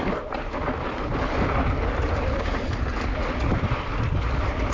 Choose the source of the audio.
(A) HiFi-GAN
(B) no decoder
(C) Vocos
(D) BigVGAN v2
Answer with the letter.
B